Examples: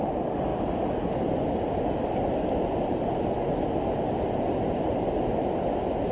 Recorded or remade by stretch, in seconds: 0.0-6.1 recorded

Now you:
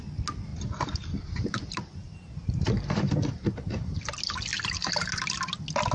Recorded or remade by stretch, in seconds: 0.0-0.5 recorded; 0.5-4.0 remade; 4.0-4.5 recorded; 4.5-5.1 remade; 5.1-5.9 recorded